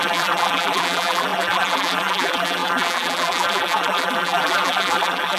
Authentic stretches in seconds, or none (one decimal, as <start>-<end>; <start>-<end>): none